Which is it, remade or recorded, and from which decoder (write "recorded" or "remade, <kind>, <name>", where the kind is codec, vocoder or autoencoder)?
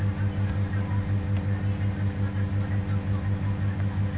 recorded